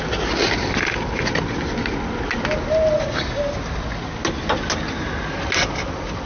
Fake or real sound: real